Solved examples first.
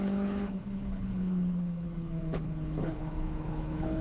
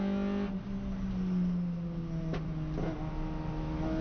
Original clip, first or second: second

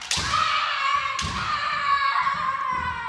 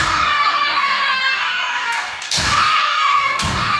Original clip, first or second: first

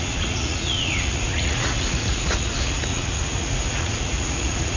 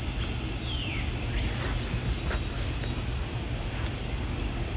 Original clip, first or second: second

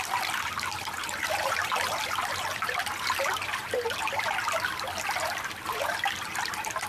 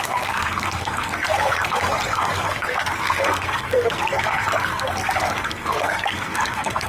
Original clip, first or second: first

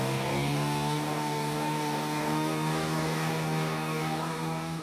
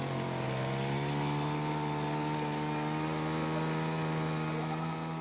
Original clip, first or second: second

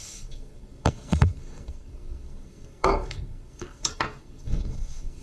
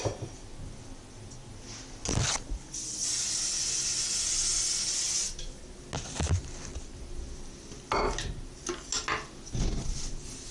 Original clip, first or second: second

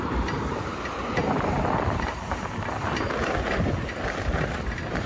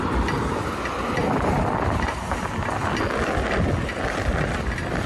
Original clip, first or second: second